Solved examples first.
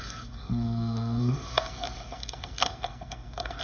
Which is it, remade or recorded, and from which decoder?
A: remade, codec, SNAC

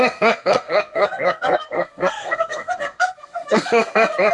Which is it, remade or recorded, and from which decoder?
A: remade, codec, SNAC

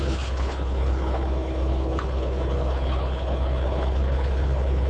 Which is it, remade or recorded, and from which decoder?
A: remade, codec, HILCodec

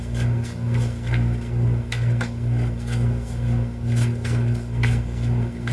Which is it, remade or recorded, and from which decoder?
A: remade, codec, SNAC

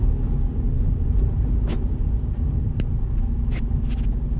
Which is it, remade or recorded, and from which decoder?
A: recorded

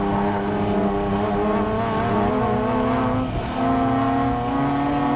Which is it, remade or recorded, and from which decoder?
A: recorded